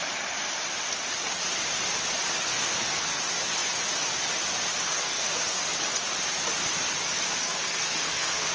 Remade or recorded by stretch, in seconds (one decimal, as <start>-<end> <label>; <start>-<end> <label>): 0.0-2.5 recorded; 2.5-3.2 remade; 3.2-4.9 recorded; 4.9-5.6 remade; 5.6-7.4 recorded; 7.4-8.5 remade